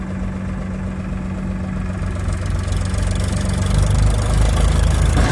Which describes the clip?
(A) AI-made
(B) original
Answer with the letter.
B